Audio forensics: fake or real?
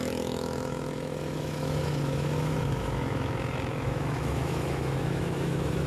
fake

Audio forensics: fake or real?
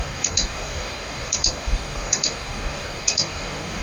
fake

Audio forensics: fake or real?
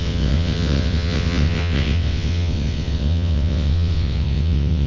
fake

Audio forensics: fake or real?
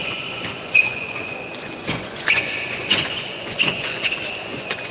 fake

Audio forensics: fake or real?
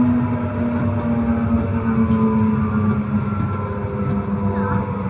real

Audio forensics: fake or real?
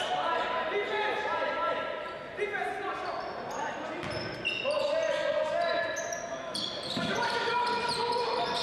real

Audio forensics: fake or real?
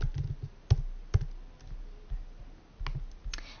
real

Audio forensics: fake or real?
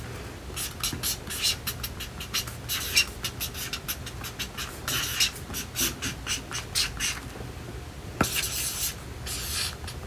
real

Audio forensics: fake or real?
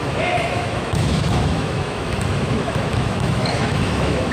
fake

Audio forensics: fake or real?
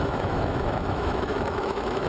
fake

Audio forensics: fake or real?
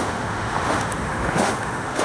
fake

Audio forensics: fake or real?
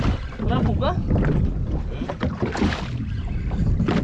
real